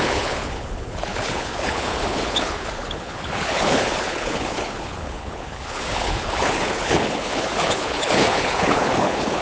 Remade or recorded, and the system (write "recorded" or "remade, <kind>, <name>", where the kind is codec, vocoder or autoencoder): remade, codec, HILCodec